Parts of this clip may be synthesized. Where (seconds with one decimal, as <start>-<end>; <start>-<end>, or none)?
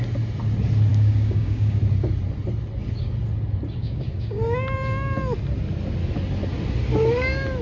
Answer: 0.9-1.8; 3.8-4.4